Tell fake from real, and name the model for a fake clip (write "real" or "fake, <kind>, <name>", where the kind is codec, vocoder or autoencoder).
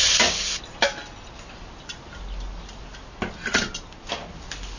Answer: real